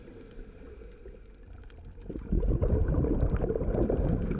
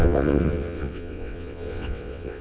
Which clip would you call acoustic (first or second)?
first